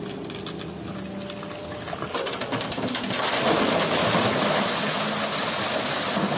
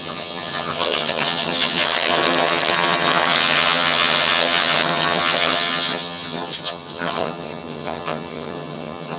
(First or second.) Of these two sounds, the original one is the first